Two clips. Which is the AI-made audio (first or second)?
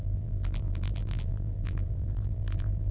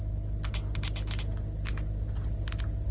first